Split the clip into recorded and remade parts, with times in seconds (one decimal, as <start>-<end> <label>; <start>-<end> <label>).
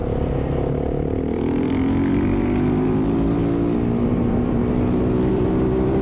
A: 0.0-3.4 remade; 3.4-4.0 recorded; 4.0-4.6 remade; 4.6-5.3 recorded; 5.3-6.0 remade